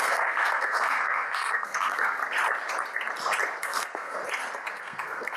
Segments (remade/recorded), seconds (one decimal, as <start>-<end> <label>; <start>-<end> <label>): 0.0-2.2 remade; 2.2-3.6 recorded; 3.6-4.2 remade; 4.2-4.8 recorded; 4.8-5.4 remade